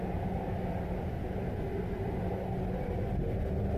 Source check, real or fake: real